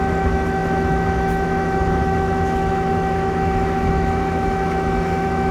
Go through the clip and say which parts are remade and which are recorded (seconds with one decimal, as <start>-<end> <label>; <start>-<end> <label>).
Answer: 0.0-5.5 remade